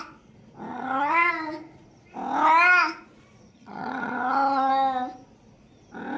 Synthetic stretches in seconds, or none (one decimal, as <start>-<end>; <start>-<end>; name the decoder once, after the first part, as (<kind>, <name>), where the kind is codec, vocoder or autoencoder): 0.7-1.3 (vocoder, HiFi-GAN); 3.5-4.7